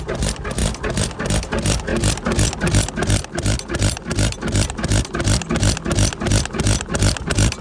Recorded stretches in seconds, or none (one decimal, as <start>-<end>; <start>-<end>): 0.0-7.6